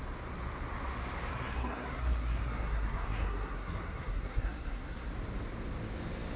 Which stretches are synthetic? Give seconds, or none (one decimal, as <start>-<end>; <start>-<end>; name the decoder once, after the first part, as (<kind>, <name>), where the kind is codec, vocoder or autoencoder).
1.3-5.1 (codec, SNAC)

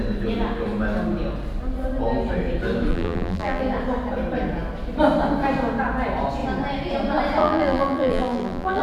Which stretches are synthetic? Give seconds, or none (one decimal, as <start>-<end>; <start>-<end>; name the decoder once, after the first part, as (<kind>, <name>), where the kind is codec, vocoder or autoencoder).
2.9-3.6 (vocoder, BigVGAN v2); 7.4-8.8

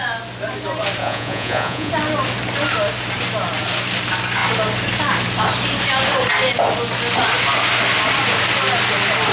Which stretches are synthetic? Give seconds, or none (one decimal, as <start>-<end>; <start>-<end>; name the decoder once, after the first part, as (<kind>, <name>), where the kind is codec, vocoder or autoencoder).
1.0-1.9 (vocoder, Vocos)

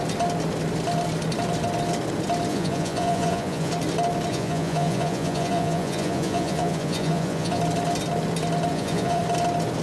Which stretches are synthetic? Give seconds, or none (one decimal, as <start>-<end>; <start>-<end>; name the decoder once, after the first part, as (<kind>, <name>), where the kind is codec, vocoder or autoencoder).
2.5-3.7 (vocoder, Vocos); 4.3-7.6; 8.7-9.2

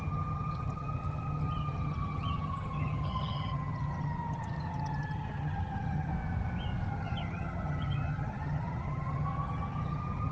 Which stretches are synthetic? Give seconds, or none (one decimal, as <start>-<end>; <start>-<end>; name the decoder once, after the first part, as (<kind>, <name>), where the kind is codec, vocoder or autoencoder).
0.0-6.1 (vocoder, HiFi-GAN); 6.9-10.3

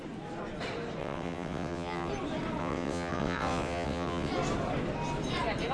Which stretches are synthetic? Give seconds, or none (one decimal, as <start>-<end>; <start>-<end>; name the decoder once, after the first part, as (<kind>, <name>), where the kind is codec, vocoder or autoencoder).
1.0-2.1 (vocoder, WaveNeXt); 2.6-4.3